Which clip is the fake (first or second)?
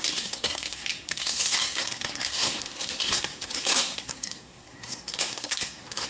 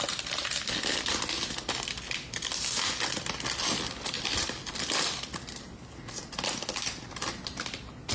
first